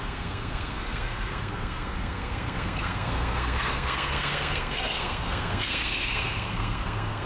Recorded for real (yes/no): no